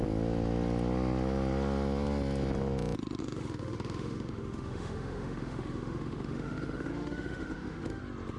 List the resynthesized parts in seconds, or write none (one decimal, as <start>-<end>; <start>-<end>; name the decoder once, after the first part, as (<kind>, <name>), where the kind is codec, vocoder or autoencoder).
3.2-8.0 (autoencoder, DAC-VAE)

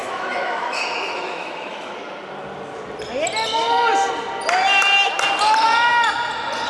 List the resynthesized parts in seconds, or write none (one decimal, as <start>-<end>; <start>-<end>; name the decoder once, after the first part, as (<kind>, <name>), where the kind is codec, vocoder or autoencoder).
0.0-1.9 (autoencoder, DAC-VAE)

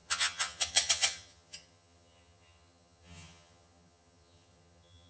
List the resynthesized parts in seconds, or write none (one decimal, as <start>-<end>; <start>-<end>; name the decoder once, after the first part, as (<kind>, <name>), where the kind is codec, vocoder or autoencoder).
0.0-5.1 (vocoder, HiFi-GAN)

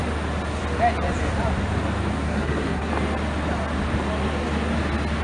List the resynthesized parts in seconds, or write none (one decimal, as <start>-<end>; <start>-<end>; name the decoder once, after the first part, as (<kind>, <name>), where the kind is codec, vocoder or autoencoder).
2.1-2.9 (codec, SNAC)

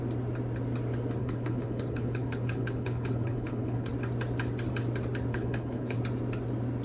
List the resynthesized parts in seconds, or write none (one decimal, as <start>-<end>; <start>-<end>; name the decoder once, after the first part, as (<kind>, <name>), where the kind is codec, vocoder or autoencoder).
1.2-3.9 (codec, HILCodec); 5.3-6.0

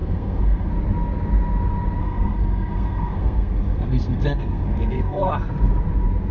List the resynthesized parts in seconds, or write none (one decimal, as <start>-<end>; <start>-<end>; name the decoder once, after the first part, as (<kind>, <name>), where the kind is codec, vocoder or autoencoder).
0.0-0.7 (codec, SNAC); 2.0-5.3

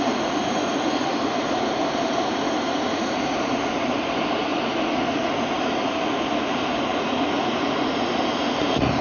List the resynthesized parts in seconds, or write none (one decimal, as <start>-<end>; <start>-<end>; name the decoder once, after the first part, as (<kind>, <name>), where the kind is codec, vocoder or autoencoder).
0.0-9.0 (vocoder, Vocos)

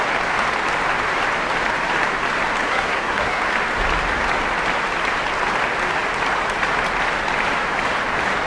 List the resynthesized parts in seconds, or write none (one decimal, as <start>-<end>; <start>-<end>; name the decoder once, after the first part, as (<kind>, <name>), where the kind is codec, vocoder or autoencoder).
2.6-3.4 (codec, SNAC)